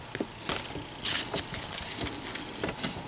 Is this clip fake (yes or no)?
no